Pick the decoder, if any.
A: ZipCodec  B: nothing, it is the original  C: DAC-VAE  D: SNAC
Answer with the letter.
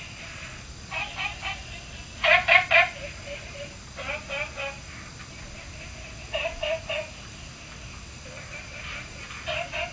B